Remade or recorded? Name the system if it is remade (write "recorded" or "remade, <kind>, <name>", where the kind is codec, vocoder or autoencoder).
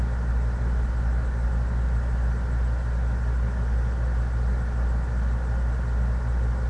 recorded